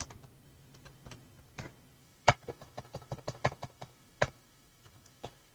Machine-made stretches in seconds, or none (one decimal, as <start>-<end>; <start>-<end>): 2.0-5.5